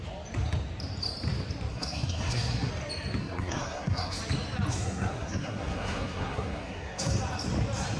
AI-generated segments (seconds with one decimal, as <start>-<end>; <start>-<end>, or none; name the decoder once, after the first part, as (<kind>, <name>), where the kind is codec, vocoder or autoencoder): 1.7-2.7 (codec, SNAC); 3.2-4.2; 4.7-7.2